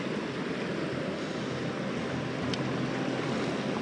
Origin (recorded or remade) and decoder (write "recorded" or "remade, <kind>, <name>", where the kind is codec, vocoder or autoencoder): recorded